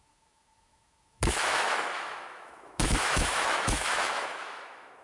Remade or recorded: remade